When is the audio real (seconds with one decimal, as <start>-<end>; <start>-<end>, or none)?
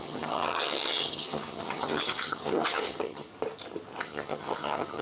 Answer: 3.3-4.0